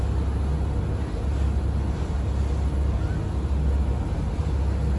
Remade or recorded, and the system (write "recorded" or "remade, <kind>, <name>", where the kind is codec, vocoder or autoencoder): recorded